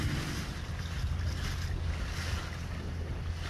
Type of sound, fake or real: real